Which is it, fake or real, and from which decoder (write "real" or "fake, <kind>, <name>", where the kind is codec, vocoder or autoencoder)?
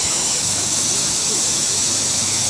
fake, autoencoder, DAC-VAE